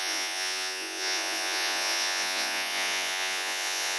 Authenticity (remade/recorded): remade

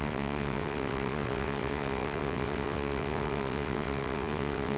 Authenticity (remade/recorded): remade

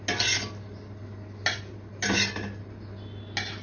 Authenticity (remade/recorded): recorded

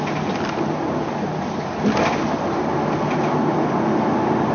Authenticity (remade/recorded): recorded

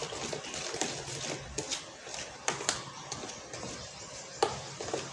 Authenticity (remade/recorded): recorded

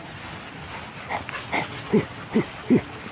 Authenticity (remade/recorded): recorded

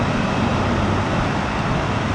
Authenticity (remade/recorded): recorded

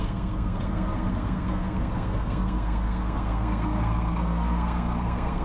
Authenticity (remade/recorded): remade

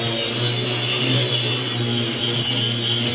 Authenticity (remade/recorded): recorded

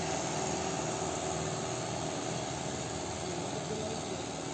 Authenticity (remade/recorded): recorded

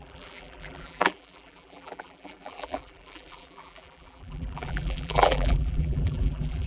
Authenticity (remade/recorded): remade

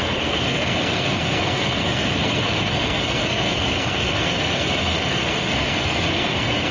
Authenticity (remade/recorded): remade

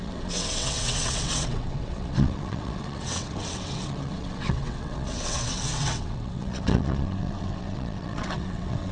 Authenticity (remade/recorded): remade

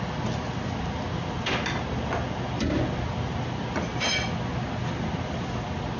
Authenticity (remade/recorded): recorded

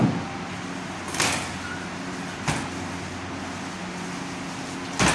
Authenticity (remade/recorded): recorded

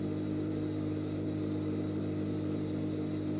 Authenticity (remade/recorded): recorded